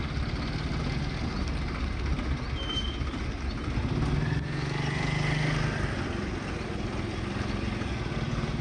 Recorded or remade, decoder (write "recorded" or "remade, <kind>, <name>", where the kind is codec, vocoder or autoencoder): recorded